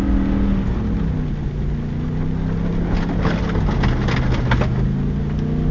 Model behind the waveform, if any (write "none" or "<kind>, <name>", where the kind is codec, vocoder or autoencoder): none